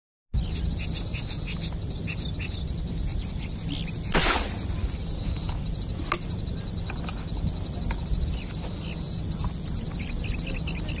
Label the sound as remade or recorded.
recorded